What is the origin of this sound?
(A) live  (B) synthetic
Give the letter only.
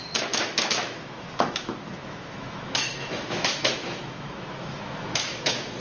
B